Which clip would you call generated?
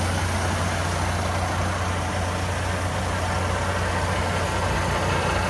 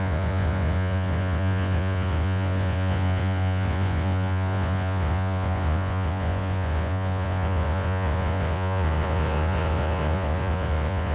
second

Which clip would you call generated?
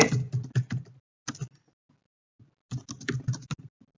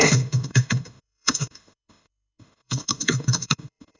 second